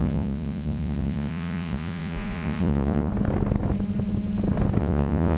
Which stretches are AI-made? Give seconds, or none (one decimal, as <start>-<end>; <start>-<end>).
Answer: 0.0-3.1; 4.8-5.4